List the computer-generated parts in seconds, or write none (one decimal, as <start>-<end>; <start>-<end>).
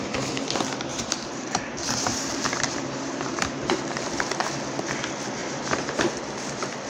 0.9-3.8; 5.4-6.0